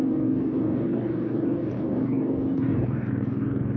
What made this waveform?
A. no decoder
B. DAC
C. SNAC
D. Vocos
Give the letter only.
B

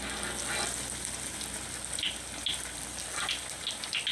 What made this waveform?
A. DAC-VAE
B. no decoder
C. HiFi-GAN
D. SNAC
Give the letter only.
B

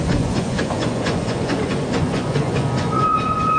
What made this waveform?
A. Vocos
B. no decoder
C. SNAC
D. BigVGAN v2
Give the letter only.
A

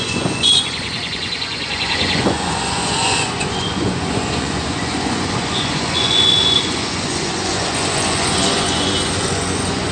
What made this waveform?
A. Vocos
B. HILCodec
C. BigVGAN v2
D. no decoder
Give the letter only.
A